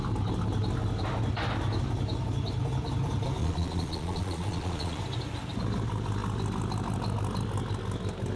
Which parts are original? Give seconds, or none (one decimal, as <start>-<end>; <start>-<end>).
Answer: 0.0-3.4; 5.0-8.4